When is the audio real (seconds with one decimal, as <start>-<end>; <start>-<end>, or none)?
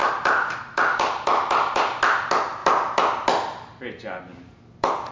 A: 1.8-5.1